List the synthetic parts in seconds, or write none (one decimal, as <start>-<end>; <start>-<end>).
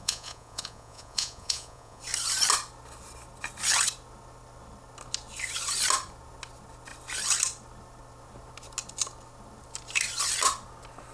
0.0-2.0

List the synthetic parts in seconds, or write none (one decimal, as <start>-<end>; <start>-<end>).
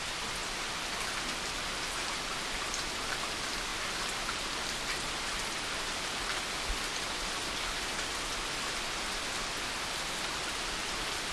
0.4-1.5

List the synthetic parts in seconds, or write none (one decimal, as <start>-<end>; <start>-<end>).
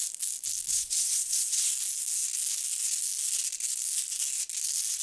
0.7-1.7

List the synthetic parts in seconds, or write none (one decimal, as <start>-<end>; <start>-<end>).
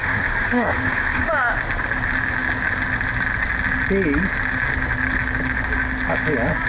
0.0-1.3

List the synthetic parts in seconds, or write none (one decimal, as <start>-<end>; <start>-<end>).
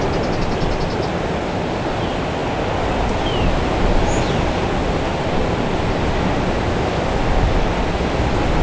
none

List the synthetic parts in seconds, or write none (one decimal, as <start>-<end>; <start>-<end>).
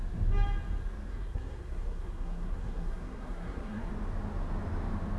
1.1-3.9